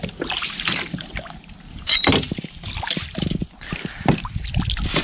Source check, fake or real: real